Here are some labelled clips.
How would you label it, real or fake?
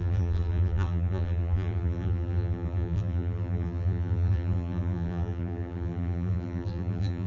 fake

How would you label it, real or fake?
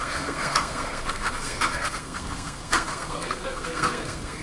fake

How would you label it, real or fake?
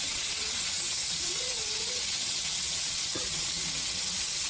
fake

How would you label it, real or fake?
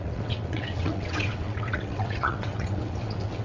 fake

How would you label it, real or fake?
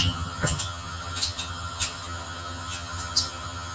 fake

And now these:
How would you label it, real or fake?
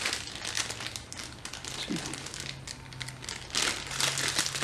real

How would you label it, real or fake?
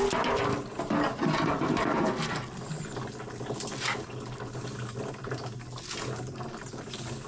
real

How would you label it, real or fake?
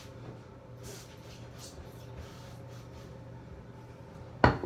real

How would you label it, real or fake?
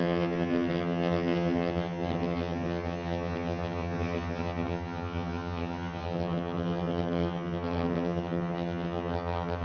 fake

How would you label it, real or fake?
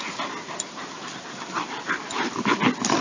real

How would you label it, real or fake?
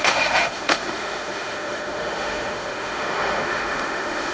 fake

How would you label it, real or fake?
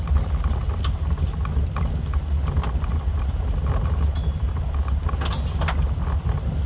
real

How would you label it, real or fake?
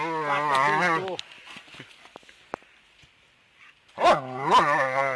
real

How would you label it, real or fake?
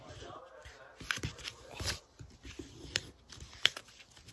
real